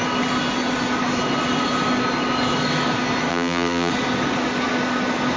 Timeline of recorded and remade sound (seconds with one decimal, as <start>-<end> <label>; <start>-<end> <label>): 0.0-3.3 recorded; 3.3-3.9 remade; 3.9-5.4 recorded